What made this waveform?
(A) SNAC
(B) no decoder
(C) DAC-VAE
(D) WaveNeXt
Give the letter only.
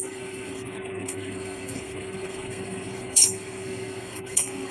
A